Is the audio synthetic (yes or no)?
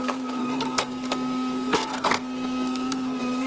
yes